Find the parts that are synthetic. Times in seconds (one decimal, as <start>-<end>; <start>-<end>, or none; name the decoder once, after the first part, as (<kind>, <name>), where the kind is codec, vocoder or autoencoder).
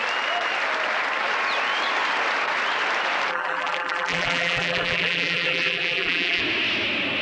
3.3-6.4 (vocoder, BigVGAN v2)